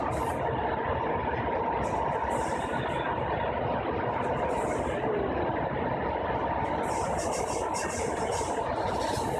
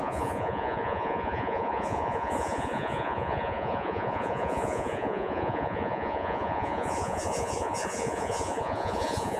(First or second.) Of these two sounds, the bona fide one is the first